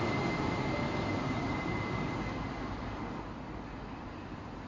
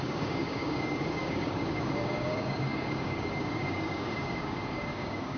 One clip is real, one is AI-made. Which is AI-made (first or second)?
second